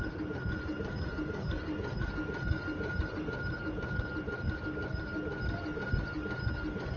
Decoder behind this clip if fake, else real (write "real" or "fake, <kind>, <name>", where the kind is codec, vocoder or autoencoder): real